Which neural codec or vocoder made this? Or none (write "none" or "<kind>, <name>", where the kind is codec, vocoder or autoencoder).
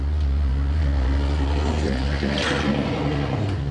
vocoder, Vocos